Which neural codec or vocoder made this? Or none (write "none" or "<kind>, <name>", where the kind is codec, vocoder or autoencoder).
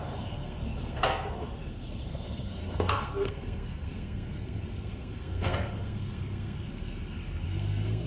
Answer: codec, SNAC